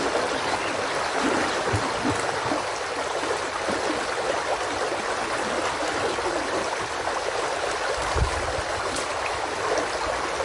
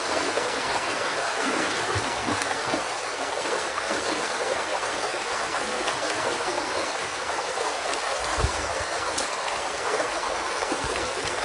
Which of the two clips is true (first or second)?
first